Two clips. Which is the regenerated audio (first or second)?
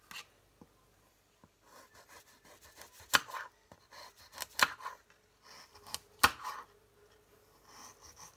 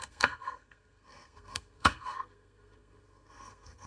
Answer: second